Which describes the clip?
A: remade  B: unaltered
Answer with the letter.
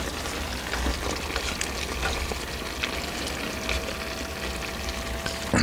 B